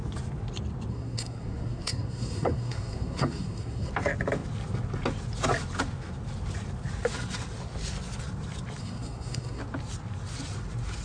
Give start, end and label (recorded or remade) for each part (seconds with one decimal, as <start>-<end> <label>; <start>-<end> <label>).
0.0-0.9 recorded; 0.9-3.9 remade; 3.9-8.8 recorded; 8.8-9.6 remade; 9.6-11.0 recorded